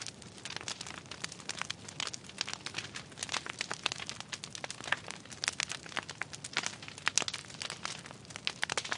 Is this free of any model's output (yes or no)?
yes